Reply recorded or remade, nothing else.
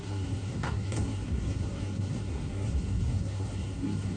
remade